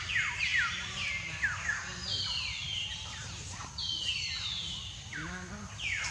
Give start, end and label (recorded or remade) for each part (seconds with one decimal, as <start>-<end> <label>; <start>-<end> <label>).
0.0-6.1 recorded